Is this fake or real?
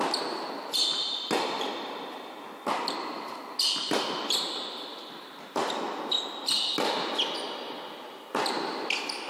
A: real